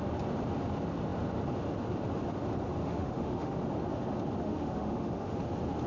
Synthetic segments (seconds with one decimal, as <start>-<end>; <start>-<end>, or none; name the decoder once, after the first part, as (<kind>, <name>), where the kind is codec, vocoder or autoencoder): 2.8-3.6 (autoencoder, DAC-VAE); 4.4-5.3